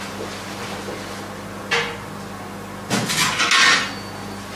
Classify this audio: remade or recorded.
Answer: recorded